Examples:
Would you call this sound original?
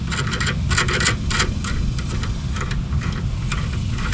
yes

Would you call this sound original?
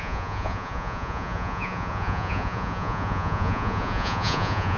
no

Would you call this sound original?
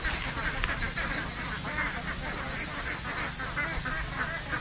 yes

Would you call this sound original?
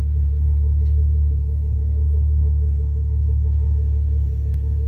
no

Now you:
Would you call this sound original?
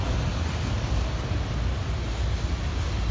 yes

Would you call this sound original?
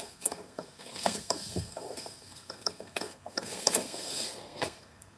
no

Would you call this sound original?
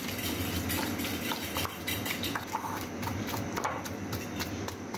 yes